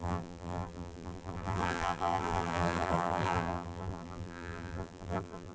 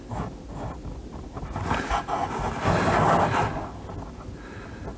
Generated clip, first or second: first